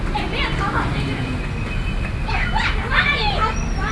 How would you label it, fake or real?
real